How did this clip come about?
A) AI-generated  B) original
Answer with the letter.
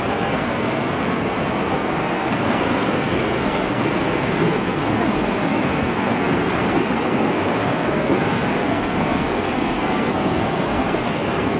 A